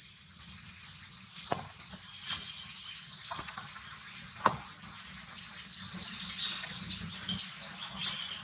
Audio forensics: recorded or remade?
recorded